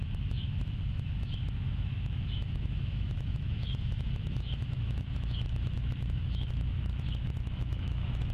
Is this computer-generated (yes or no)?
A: yes